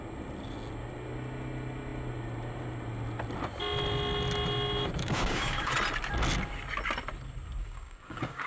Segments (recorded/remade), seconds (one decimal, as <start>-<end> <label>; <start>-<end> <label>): 0.0-5.0 recorded; 5.0-5.7 remade; 5.7-7.6 recorded; 7.6-8.5 remade